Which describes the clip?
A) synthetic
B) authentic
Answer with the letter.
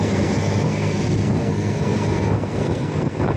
A